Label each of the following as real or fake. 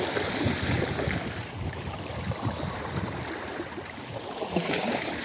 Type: fake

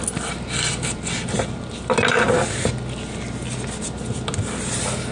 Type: real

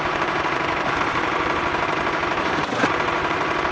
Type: fake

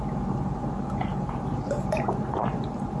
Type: fake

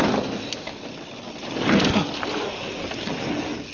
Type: real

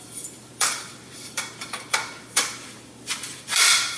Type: fake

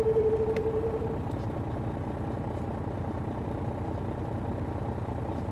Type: fake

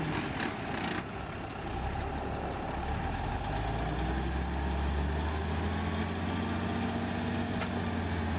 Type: real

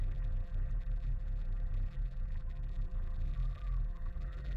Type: fake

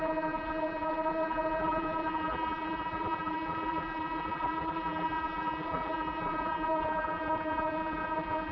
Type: fake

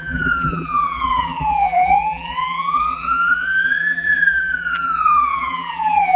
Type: fake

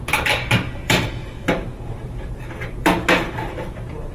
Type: fake